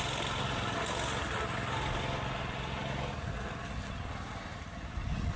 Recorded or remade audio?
recorded